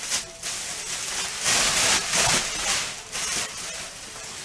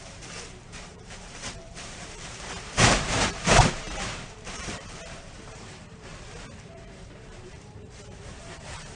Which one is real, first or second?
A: first